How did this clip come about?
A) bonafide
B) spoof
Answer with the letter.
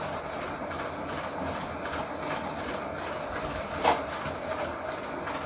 A